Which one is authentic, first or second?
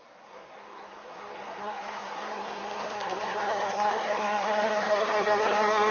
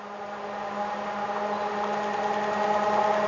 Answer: second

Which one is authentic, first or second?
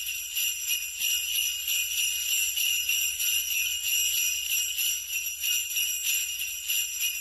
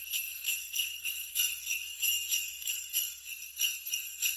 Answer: first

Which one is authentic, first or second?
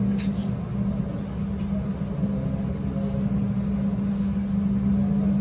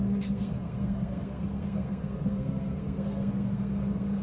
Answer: first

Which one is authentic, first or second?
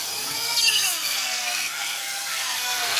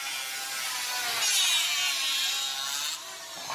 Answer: second